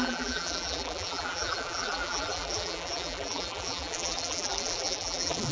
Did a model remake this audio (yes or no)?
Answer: yes